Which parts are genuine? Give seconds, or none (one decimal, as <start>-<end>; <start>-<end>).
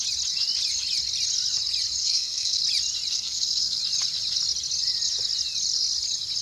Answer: 0.0-2.0; 2.6-3.1; 3.8-6.4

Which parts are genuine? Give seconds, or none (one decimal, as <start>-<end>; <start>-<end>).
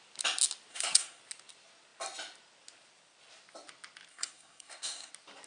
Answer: 0.0-0.7; 1.2-4.1; 5.1-5.5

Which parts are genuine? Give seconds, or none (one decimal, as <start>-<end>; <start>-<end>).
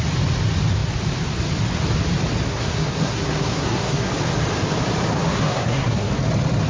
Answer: 0.0-2.5; 4.1-5.1; 6.1-6.7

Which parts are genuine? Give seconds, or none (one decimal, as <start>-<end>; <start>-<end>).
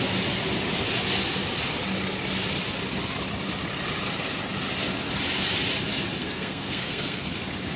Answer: 0.0-6.2; 7.3-7.8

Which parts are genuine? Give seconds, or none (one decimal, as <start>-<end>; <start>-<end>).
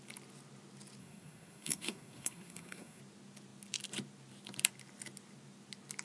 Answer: 0.0-1.0; 3.0-6.0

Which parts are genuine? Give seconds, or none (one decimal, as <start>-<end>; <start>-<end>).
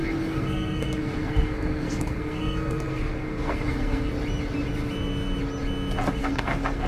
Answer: 4.1-6.2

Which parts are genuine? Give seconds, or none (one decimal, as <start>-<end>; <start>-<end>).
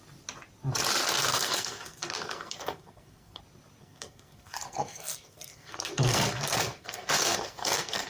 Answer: 0.0-1.3; 3.4-3.8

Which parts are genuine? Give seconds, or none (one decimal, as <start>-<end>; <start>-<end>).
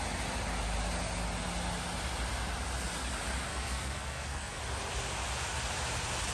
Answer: 0.0-3.5; 4.6-6.3